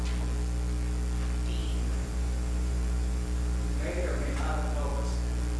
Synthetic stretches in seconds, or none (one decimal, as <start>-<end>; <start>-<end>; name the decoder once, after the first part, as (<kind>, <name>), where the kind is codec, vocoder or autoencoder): 1.6-4.4 (vocoder, BigVGAN v2)

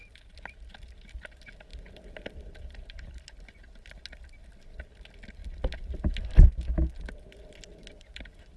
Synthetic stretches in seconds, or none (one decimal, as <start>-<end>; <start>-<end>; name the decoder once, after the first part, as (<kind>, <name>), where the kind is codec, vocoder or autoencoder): 1.7-4.0 (vocoder, BigVGAN v2)

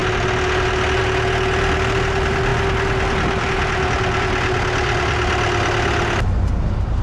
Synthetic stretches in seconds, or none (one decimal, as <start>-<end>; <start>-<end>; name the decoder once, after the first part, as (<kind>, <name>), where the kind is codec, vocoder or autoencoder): none

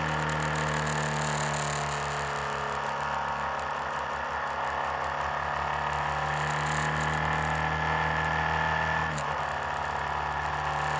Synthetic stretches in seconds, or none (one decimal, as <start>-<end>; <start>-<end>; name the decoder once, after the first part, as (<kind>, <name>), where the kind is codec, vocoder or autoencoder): none

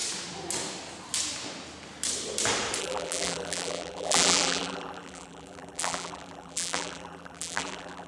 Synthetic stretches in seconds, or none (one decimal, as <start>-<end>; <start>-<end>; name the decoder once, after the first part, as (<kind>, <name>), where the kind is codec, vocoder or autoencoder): 2.8-8.1 (vocoder, BigVGAN v2)